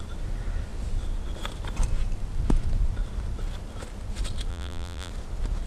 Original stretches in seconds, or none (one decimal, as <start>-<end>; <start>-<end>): 0.0-4.5; 5.1-5.7